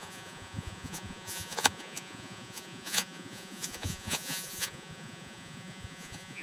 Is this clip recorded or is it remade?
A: remade